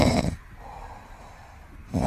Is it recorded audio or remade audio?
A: recorded